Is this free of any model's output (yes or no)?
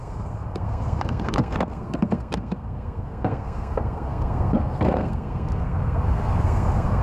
no